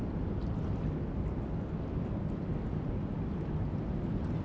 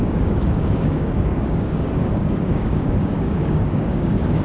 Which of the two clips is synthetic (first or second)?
second